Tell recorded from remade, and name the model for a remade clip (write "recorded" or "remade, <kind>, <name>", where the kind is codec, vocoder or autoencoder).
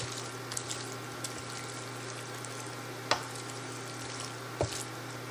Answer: recorded